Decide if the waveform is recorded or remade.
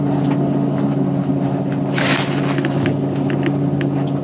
recorded